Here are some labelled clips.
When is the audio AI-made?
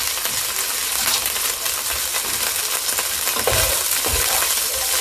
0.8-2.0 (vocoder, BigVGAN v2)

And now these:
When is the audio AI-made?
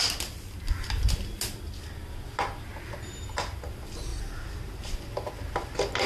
4.1-4.8 (vocoder, BigVGAN v2)